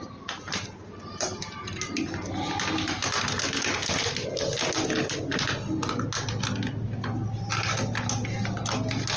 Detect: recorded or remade recorded